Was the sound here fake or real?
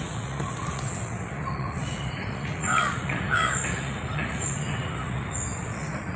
fake